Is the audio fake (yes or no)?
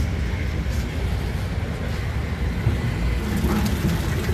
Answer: no